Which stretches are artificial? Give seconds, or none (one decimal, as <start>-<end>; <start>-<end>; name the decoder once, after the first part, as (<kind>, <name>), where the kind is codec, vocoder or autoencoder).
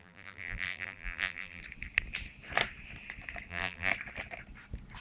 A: 0.0-1.6 (vocoder, BigVGAN v2); 3.5-3.9